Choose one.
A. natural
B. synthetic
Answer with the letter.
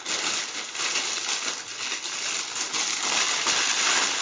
A